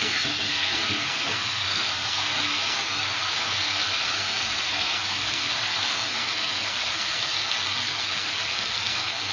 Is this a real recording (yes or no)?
no